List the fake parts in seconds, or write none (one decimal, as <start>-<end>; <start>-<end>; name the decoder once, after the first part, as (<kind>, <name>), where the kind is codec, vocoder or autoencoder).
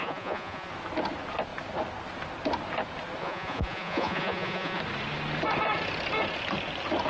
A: 0.0-0.7 (vocoder, Vocos); 3.2-4.8